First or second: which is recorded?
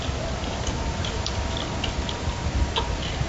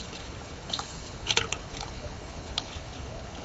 first